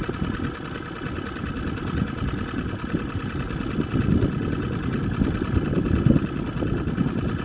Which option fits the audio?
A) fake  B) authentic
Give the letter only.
B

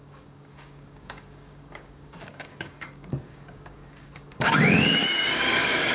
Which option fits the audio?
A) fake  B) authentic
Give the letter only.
A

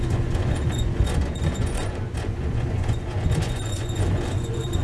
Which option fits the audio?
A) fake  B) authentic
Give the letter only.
A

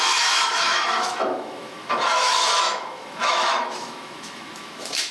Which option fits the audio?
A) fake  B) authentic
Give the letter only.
A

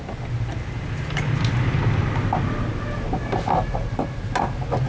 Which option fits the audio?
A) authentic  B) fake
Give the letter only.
A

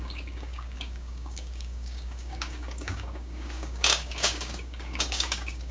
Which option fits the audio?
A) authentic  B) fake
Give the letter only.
B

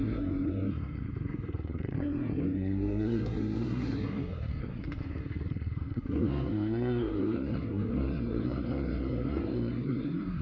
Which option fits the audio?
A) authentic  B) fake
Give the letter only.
B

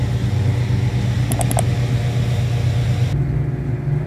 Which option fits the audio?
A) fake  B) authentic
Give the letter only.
B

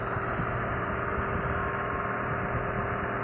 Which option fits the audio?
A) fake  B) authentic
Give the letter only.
B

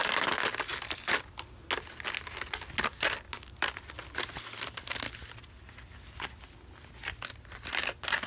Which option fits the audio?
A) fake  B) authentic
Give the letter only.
B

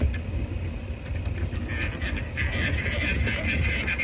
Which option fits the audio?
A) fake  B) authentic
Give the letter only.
B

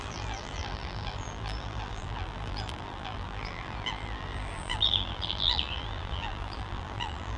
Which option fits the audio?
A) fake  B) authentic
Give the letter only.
A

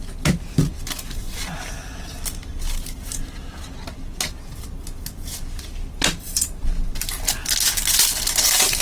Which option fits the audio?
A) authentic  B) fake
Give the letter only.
A